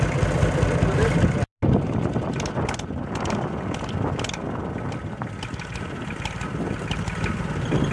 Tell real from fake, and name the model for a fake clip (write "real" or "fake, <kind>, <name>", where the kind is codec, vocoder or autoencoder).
real